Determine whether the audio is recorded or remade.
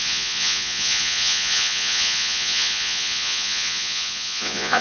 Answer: remade